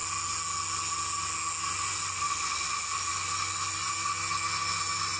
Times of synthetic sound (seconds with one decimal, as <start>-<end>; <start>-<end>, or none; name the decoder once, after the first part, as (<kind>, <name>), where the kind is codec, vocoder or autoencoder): none